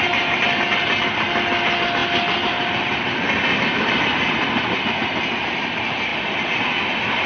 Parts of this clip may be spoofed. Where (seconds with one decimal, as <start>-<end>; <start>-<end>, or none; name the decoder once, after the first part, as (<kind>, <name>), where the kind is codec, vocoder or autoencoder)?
none